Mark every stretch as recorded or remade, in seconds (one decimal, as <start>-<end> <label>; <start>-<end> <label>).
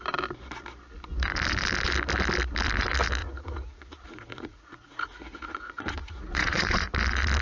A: 0.0-3.2 recorded; 3.2-6.9 remade; 6.9-7.4 recorded